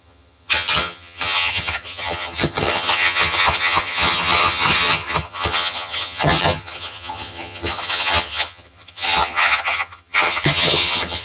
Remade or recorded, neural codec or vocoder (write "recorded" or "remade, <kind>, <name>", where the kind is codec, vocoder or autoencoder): remade, vocoder, HiFi-GAN